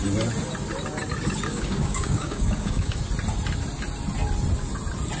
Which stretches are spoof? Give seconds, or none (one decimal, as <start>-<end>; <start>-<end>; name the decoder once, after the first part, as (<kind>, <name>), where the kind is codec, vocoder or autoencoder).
1.5-3.0 (codec, DAC)